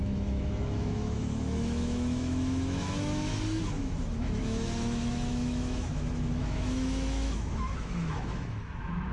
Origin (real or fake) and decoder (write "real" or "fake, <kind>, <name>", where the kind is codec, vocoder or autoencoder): fake, autoencoder, DAC-VAE